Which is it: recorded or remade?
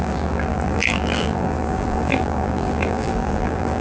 remade